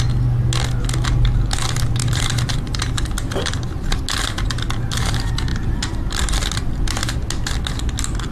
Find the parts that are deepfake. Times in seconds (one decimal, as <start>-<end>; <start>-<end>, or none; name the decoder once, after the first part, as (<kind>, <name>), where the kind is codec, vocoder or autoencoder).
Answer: 2.0-4.0 (vocoder, BigVGAN v2); 5.5-6.5